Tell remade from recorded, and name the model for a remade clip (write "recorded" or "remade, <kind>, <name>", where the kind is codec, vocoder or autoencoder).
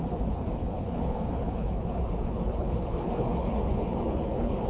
remade, codec, HILCodec